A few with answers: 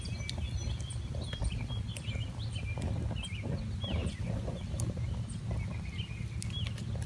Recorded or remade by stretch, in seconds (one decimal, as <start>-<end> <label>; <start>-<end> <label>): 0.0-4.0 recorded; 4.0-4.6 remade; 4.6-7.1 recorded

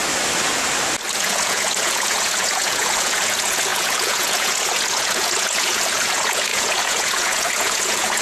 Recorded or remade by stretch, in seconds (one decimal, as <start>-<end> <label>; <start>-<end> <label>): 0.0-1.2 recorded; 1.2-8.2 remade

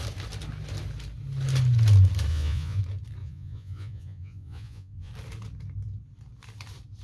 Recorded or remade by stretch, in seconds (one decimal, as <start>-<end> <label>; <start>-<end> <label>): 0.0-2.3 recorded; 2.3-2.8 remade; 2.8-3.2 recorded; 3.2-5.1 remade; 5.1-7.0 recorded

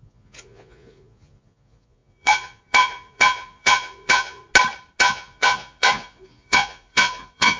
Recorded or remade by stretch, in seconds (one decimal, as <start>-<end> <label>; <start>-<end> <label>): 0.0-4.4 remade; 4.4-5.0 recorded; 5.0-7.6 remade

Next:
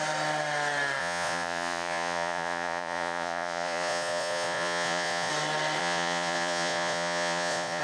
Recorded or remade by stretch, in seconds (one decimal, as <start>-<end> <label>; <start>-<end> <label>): 0.0-1.0 recorded; 1.0-5.3 remade; 5.3-5.8 recorded; 5.8-7.8 remade

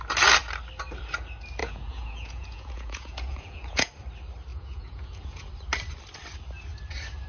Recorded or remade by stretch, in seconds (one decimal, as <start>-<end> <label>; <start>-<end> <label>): 0.0-1.6 recorded; 1.6-3.9 remade; 3.9-4.5 recorded; 4.5-5.5 remade; 5.5-7.3 recorded

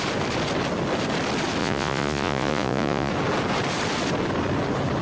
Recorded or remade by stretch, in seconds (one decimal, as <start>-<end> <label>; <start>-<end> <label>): 0.0-1.6 recorded; 1.6-3.1 remade; 3.1-5.0 recorded

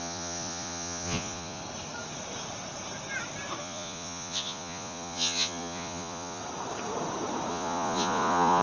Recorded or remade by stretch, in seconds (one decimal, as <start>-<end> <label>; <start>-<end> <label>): 0.0-1.6 remade; 1.6-3.6 recorded; 3.6-6.4 remade; 6.4-7.5 recorded; 7.5-8.6 remade